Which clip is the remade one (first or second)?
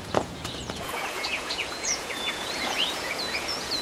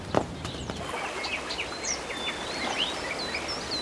first